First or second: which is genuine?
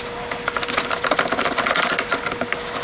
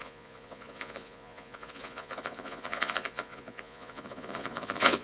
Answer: first